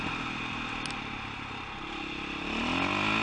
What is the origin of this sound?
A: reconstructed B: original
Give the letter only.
B